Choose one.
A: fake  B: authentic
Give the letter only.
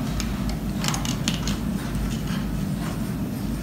B